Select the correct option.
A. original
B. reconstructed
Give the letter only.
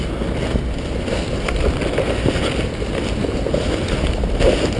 A